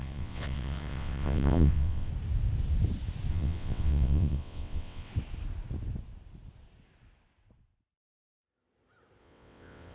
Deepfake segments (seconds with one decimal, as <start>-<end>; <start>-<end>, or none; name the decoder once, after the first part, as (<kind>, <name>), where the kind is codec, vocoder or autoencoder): 0.0-2.1 (vocoder, WaveNeXt); 3.3-5.1; 9.2-9.9